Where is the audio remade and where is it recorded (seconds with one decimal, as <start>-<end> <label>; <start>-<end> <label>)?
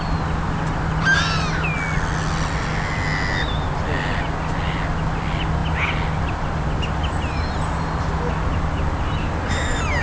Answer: 0.0-10.0 recorded